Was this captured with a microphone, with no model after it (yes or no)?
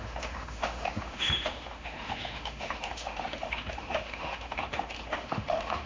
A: no